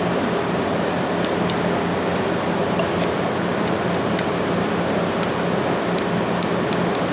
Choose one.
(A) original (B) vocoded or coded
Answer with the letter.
A